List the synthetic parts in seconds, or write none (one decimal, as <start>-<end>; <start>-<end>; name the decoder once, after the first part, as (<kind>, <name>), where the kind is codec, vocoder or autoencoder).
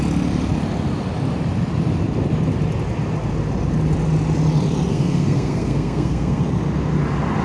4.9-6.4 (codec, SNAC)